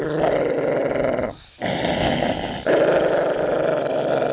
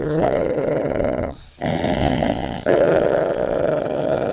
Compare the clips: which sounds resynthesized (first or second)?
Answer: second